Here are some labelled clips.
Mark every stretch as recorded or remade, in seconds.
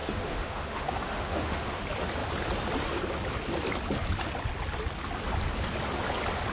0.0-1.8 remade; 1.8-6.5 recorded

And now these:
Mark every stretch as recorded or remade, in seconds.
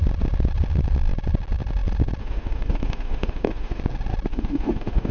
0.0-2.2 recorded; 2.2-3.8 remade; 3.8-4.3 recorded; 4.3-5.1 remade